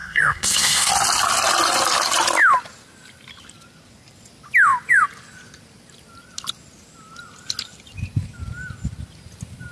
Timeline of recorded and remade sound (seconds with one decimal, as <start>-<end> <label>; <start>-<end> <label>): 0.0-0.9 remade; 0.9-9.7 recorded